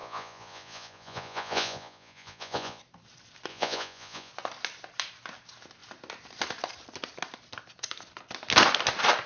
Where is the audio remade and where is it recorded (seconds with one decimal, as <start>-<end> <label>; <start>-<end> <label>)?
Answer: 0.0-2.8 remade; 2.8-3.5 recorded; 3.5-4.3 remade; 4.3-9.3 recorded